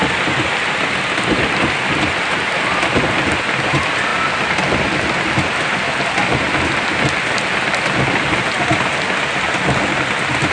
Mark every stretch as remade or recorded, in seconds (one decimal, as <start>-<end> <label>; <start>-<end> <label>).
0.0-10.5 recorded